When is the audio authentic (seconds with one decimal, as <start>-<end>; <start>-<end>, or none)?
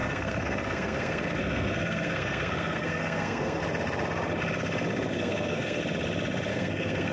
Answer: 3.6-5.1; 5.8-6.5